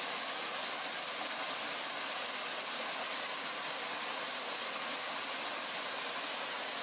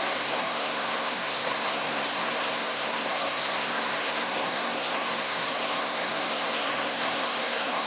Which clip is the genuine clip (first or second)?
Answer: first